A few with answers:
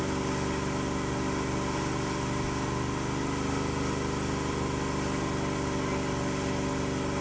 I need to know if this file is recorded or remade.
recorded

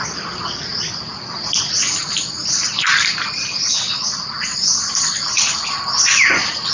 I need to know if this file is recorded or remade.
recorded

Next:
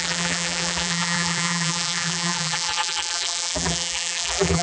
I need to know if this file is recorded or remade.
remade